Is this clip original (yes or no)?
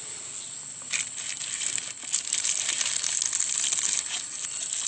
yes